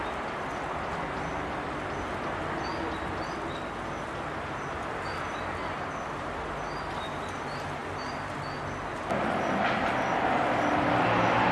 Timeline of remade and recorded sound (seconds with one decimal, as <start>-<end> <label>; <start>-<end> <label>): 0.0-11.5 recorded